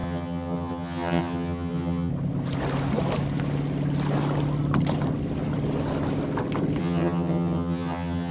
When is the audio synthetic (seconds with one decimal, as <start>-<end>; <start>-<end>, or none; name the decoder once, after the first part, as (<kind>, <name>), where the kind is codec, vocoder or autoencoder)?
0.0-2.1 (vocoder, HiFi-GAN); 6.8-8.3